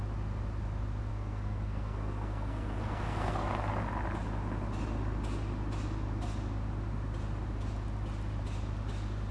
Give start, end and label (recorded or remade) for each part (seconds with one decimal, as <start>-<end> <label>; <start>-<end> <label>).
0.0-1.1 recorded; 1.1-3.5 remade; 3.5-9.3 recorded